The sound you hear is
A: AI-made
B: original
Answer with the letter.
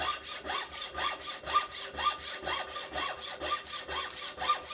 B